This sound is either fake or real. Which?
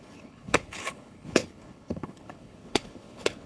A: fake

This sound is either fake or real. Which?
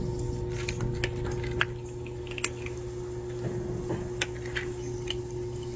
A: real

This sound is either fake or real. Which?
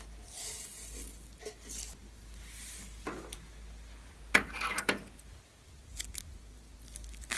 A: real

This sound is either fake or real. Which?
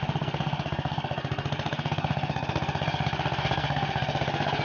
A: fake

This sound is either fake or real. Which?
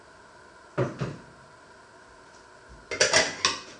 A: real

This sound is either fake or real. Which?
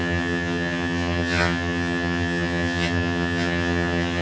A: fake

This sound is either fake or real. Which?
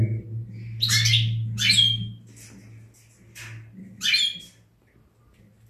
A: real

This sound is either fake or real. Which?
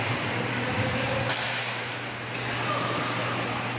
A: real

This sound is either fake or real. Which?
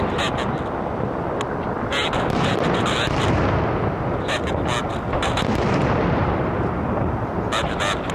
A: real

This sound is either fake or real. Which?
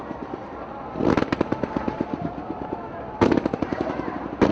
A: real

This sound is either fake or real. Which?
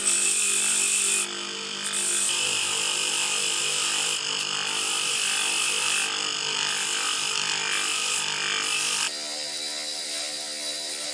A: real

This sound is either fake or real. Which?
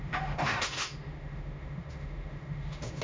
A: fake